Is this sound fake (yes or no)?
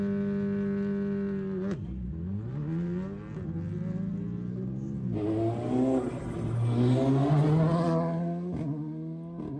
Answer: no